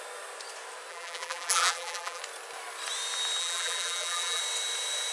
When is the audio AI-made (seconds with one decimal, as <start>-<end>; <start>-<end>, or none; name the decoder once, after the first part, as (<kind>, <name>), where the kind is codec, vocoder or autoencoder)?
0.9-2.2 (vocoder, BigVGAN v2); 3.4-4.4